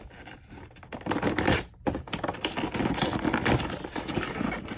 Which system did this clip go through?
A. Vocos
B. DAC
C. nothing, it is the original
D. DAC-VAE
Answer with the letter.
C